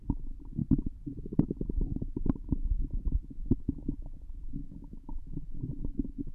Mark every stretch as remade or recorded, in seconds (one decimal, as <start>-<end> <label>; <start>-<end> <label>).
0.0-4.6 recorded; 4.6-6.3 remade